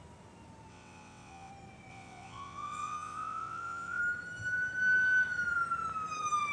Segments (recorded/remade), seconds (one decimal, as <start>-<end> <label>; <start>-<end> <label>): 0.0-0.7 recorded; 0.7-1.5 remade; 1.5-1.9 recorded; 1.9-4.0 remade; 4.0-6.5 recorded